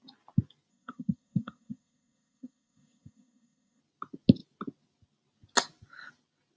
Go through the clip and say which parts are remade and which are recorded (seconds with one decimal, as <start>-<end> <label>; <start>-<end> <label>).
0.0-0.7 recorded; 0.7-3.8 remade; 3.8-6.6 recorded